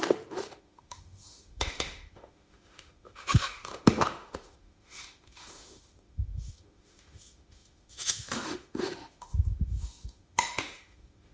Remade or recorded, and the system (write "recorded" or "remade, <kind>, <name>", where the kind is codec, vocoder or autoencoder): remade, autoencoder, DAC-VAE